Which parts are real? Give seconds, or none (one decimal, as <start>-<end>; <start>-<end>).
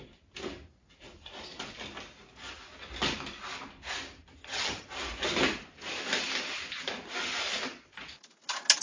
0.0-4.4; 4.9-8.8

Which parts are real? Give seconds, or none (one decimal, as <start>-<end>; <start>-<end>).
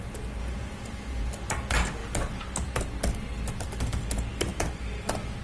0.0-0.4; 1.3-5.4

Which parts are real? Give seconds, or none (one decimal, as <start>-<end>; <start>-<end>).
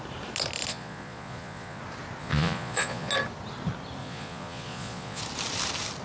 0.0-0.7; 1.8-2.2; 3.1-4.0; 5.2-6.0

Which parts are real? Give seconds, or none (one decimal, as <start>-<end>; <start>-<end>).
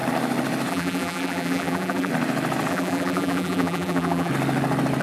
0.0-0.7; 2.1-2.7; 4.3-5.0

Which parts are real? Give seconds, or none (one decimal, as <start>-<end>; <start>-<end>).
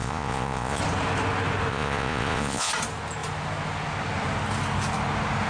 0.8-1.7; 2.7-5.5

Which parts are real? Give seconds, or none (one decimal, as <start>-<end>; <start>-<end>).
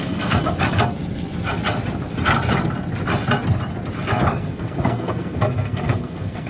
0.4-4.3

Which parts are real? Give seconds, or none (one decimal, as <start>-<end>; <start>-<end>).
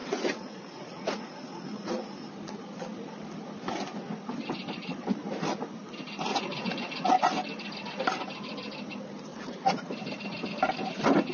1.9-6.3; 7.1-9.3; 9.9-11.3